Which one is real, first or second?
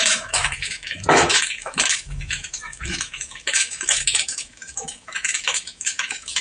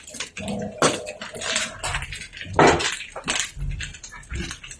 second